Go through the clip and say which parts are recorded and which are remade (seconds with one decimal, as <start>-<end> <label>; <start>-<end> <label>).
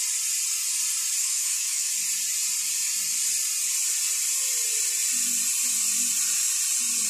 0.0-1.2 recorded; 1.2-1.9 remade; 1.9-7.1 recorded